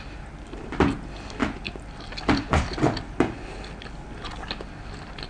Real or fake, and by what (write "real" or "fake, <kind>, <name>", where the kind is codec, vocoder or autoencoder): real